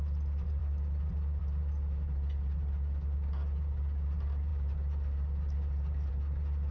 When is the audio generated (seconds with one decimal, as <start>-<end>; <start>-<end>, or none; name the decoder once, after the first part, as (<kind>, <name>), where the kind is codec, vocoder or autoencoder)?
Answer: none